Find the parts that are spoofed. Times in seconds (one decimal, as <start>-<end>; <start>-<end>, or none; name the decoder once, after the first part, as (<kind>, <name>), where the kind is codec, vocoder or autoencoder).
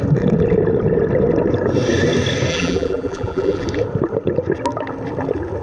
2.5-3.6 (vocoder, BigVGAN v2)